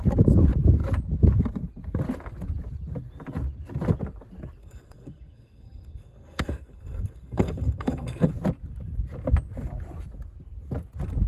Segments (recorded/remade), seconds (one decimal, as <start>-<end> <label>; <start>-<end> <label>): 0.0-4.6 recorded; 4.6-8.3 remade; 8.3-11.3 recorded